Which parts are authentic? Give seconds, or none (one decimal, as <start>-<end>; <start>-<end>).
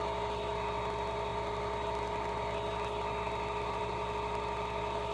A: 0.0-5.1